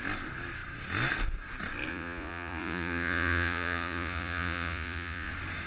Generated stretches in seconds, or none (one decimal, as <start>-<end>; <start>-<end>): 1.9-5.3

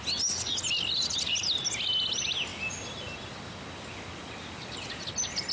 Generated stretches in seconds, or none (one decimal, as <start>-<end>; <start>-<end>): none

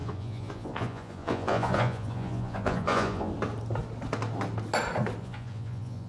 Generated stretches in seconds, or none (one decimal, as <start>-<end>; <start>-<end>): 0.0-3.3; 5.2-6.1

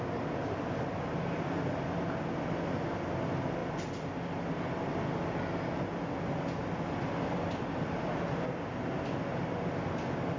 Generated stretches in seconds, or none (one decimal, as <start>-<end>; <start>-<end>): none

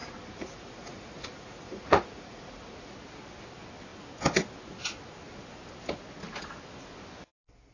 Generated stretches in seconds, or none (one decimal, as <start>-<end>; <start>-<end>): 0.0-2.9

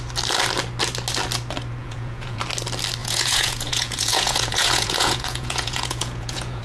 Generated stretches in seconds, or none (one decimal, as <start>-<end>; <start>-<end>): 1.8-2.4; 3.0-6.6

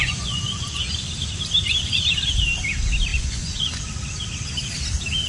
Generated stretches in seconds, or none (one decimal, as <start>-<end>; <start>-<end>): 0.0-0.9; 3.1-3.8